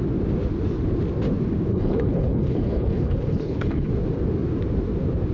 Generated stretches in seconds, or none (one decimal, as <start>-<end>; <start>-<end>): 1.7-3.9

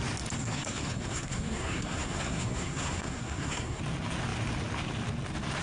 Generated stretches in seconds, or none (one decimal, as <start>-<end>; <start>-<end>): 0.4-3.8

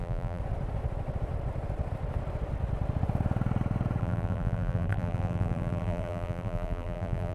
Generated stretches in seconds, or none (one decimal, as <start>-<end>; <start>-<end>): 0.0-0.4; 4.0-7.3

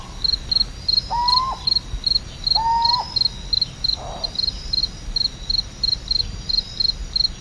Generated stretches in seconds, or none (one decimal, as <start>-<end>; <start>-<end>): 4.8-6.5

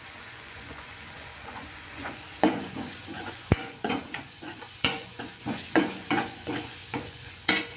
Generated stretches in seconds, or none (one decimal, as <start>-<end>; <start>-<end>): 0.0-7.8

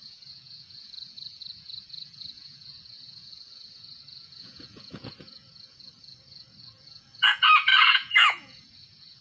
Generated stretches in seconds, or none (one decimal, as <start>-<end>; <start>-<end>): 0.0-9.2